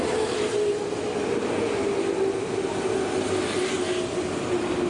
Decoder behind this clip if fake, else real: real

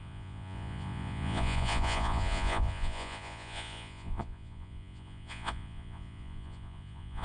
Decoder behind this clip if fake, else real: fake, vocoder, Vocos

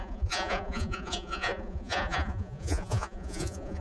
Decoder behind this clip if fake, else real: fake, vocoder, Vocos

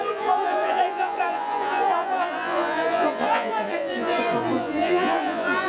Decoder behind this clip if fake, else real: fake, vocoder, Vocos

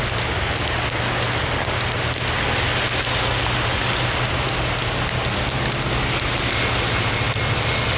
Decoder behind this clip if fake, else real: real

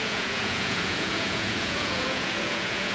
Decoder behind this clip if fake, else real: fake, vocoder, Vocos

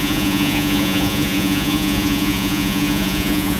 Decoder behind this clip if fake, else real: fake, vocoder, Vocos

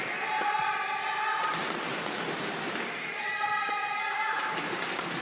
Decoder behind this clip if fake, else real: real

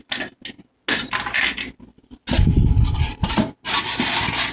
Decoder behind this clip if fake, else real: real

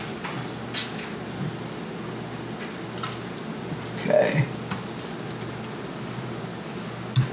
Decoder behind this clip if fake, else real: real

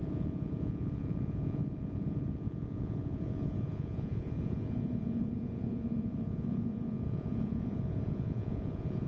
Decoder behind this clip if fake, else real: fake, vocoder, Vocos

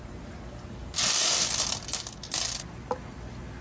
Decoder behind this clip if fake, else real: real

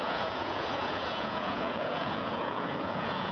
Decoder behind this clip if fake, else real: fake, vocoder, Vocos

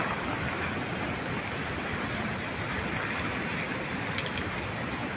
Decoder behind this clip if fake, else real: real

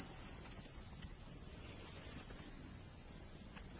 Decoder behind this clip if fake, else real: fake, vocoder, Vocos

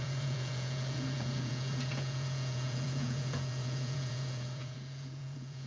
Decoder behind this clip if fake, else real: fake, vocoder, Vocos